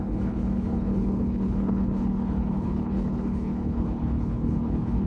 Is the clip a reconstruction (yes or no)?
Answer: yes